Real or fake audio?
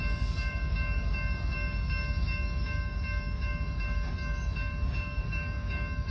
fake